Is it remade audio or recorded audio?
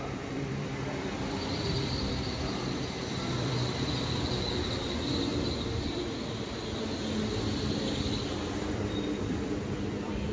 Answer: remade